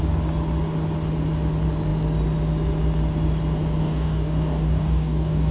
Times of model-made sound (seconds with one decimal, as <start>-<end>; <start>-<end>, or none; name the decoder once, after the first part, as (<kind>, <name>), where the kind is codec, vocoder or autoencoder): 3.8-5.5 (codec, DAC)